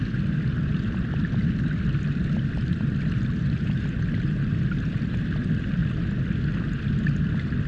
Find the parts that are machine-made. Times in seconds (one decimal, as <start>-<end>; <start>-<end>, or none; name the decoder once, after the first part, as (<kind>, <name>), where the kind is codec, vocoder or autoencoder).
none